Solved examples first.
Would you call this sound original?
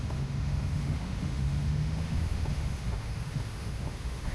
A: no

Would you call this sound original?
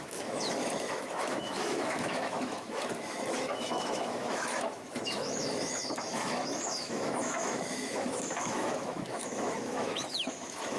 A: no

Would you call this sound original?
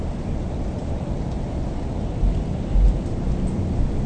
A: yes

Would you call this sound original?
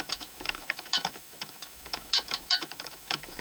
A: no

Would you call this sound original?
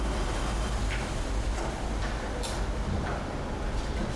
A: yes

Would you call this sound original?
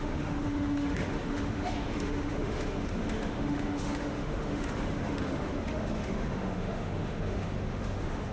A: no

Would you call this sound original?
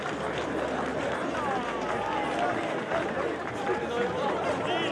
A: yes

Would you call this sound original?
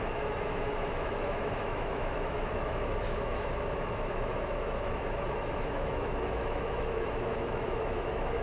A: no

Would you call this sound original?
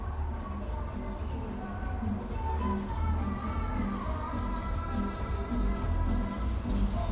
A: yes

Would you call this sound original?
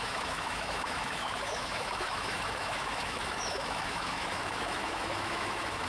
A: no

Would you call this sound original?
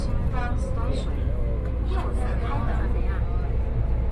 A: yes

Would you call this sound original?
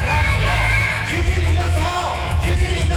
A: no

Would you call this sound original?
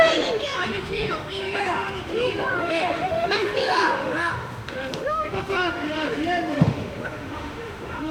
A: no